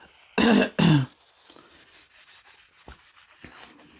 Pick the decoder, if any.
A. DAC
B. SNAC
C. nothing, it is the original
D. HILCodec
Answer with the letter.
C